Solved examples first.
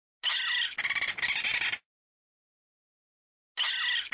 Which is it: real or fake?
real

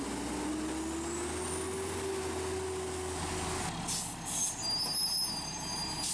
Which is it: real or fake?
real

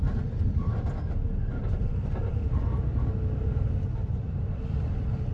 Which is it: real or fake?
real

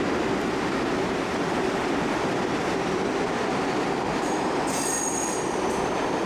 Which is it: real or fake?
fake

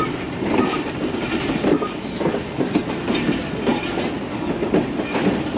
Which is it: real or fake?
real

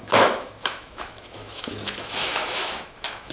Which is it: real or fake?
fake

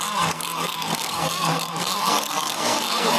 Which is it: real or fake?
fake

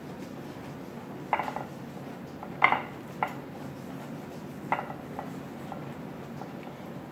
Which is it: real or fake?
real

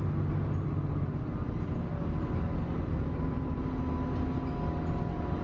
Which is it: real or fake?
real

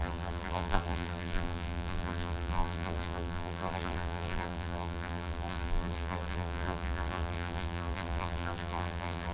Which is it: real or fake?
fake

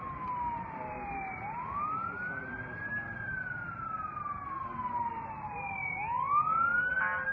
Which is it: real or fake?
real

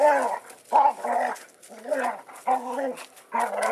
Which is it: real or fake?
real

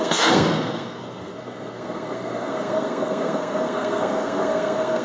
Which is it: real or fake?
fake